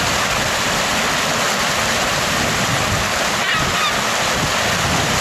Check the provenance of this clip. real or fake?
real